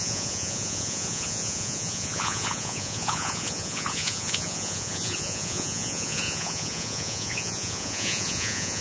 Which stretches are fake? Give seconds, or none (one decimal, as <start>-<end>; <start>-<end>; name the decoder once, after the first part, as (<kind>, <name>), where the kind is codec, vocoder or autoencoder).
0.0-8.8 (vocoder, Vocos)